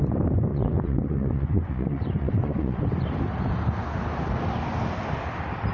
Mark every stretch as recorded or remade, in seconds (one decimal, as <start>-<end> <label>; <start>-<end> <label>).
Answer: 0.0-0.5 recorded; 0.5-2.8 remade; 2.8-5.7 recorded